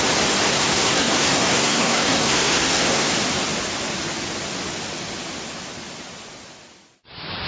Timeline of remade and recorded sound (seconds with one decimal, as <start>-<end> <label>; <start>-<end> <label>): 0.0-0.5 recorded; 0.5-3.1 remade; 3.1-7.5 recorded